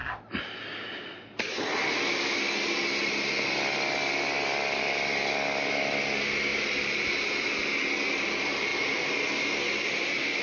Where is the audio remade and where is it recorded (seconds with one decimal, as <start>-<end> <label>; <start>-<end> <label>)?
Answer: 0.0-10.4 recorded